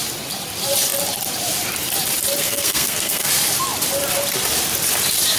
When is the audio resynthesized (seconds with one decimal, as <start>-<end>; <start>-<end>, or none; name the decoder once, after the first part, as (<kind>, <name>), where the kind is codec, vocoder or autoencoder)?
2.4-3.3 (codec, SNAC)